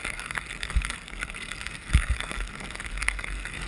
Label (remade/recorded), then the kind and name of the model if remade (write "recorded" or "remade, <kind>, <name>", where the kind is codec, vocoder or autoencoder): remade, codec, SNAC